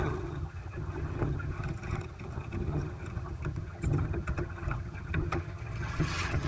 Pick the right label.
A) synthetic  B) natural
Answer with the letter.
A